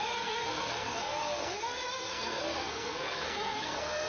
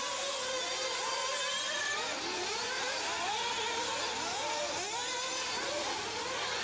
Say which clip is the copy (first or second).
first